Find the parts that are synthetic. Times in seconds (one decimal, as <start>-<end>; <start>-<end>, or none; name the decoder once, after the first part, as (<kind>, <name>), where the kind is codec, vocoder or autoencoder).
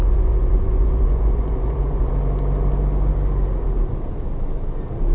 0.0-2.1 (vocoder, Vocos)